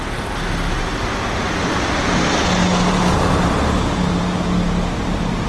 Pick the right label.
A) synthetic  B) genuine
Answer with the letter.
B